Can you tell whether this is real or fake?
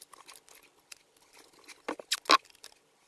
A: real